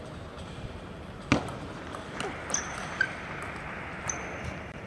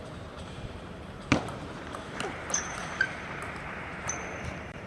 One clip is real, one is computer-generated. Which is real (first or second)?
first